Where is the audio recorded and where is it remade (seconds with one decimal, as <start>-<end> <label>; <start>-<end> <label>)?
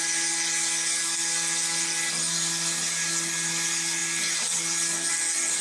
0.0-5.6 recorded